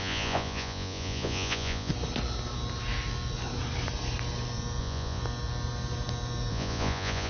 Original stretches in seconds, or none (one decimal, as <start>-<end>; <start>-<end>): 1.9-4.8; 5.2-6.5